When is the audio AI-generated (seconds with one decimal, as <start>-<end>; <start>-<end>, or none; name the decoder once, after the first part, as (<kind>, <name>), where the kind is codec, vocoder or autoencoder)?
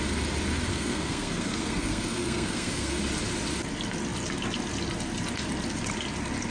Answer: 0.7-3.0 (codec, SNAC)